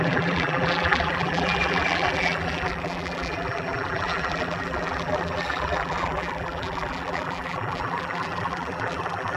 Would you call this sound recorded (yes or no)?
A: no